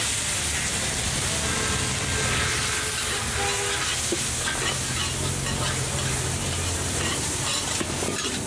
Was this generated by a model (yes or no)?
no